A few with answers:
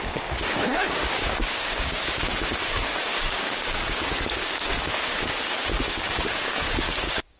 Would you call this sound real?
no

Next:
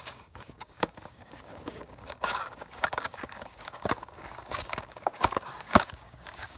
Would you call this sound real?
no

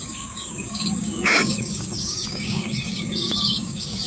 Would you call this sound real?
no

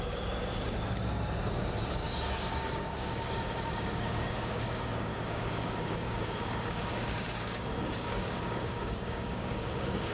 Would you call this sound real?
no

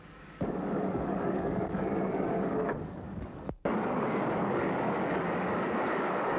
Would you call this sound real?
no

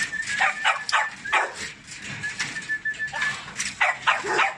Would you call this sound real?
yes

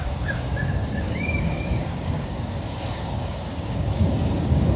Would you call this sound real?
no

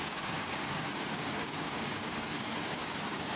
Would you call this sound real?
no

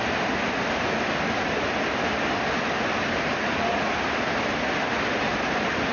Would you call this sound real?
yes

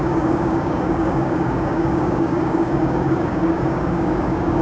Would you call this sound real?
no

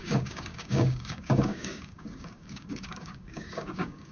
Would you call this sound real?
no